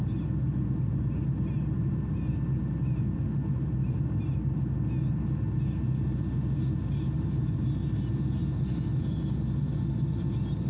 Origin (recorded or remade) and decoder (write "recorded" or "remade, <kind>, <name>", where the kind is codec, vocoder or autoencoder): recorded